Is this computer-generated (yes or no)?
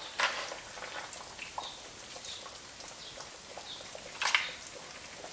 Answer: no